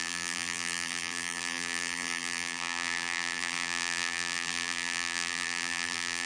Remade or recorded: remade